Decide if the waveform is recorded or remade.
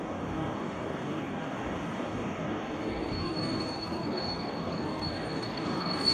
remade